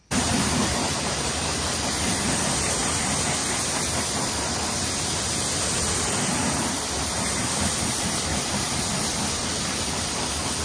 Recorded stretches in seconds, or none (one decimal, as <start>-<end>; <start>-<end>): 0.0-0.6; 2.2-3.4; 4.0-8.3; 8.9-10.6